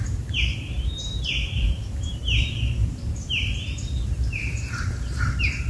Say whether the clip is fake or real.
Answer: fake